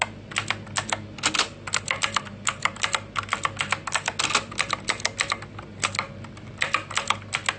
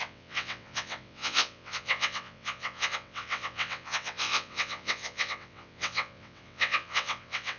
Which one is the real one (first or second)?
first